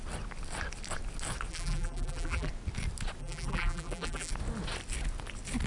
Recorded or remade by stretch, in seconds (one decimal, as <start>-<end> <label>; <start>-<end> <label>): 0.0-1.5 recorded; 1.5-2.5 remade; 2.5-3.2 recorded; 3.2-4.3 remade; 4.3-5.7 recorded